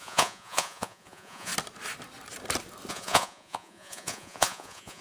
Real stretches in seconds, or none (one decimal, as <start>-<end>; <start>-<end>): 1.5-2.9